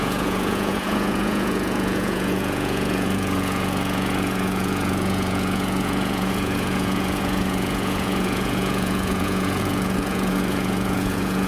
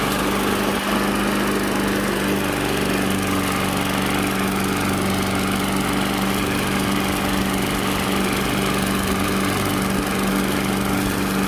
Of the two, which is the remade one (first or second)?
first